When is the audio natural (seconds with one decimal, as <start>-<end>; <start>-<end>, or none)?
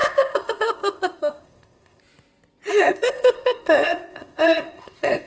2.0-2.7